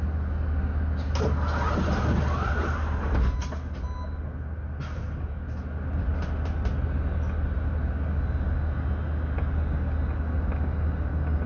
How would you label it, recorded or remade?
recorded